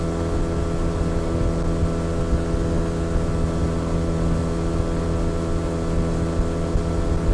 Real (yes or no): yes